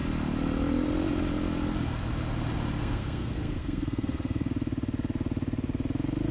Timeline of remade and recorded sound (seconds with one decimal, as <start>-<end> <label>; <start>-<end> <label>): 0.0-2.8 recorded; 2.8-4.5 remade; 4.5-6.3 recorded